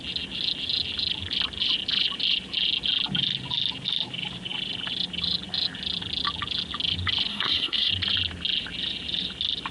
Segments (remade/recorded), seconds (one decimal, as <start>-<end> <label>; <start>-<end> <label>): 0.0-7.3 recorded; 7.3-7.9 remade; 7.9-9.7 recorded